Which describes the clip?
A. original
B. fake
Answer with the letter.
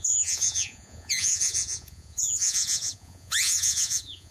B